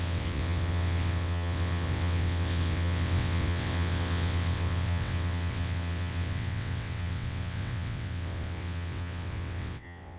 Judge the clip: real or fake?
fake